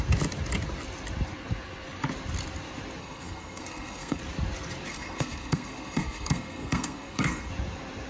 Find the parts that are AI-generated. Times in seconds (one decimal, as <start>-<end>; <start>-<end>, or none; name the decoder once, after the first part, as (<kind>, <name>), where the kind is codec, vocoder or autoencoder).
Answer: 3.0-4.2 (codec, SNAC); 4.9-7.5